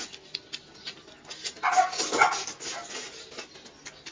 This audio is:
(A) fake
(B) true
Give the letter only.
B